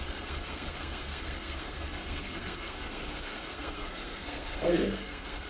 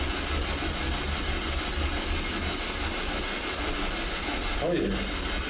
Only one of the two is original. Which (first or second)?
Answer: second